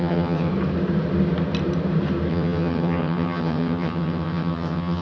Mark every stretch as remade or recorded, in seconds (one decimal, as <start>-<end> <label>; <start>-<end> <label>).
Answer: 0.0-0.5 remade; 0.5-2.3 recorded; 2.3-5.0 remade